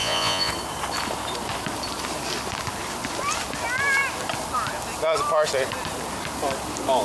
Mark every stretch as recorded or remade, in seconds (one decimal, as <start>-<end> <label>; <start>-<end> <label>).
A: 0.0-0.5 remade; 0.5-7.0 recorded